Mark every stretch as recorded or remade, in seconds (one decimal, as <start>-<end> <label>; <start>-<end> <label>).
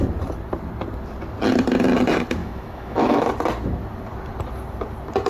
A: 0.0-2.4 recorded; 2.4-3.3 remade; 3.3-5.3 recorded